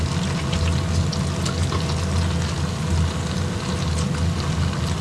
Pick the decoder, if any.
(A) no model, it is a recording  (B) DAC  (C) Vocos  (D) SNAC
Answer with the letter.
A